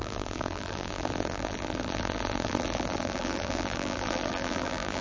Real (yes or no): no